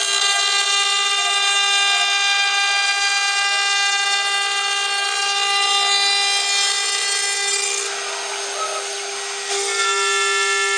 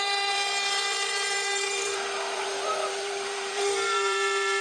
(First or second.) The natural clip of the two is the first